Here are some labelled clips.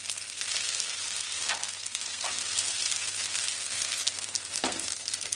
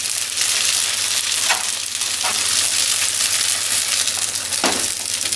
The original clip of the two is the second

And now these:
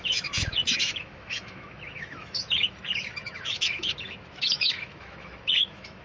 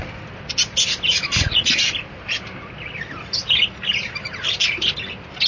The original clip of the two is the second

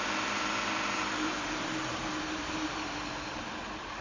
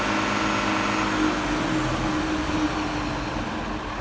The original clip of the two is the second